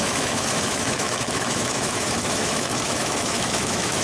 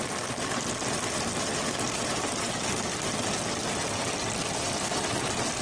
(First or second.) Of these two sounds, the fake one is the first